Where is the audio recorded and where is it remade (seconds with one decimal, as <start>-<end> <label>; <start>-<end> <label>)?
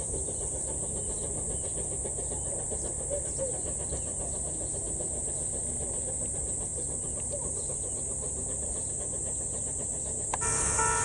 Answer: 0.0-11.0 recorded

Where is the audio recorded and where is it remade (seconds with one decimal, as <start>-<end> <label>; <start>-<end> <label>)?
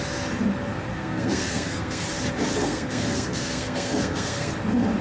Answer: 0.0-0.9 recorded; 0.9-2.0 remade; 2.0-2.6 recorded; 2.6-4.5 remade; 4.5-5.0 recorded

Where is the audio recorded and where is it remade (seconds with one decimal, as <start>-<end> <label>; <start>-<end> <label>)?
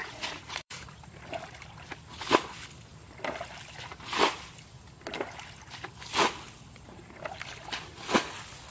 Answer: 0.0-1.0 remade; 1.0-8.7 recorded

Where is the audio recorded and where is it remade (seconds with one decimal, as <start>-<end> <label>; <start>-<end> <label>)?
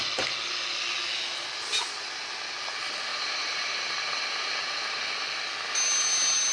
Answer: 0.0-3.1 recorded; 3.1-5.0 remade; 5.0-6.5 recorded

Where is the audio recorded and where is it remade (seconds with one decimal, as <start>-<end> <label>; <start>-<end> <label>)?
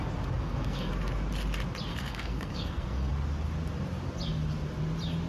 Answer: 0.0-0.4 recorded; 0.4-0.9 remade; 0.9-1.9 recorded; 1.9-3.1 remade; 3.1-5.3 recorded